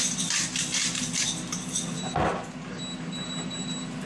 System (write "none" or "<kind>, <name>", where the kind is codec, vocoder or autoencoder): none